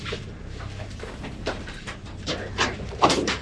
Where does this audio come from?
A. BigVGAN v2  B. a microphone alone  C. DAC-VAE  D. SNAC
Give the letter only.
A